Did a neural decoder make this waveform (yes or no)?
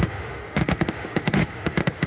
yes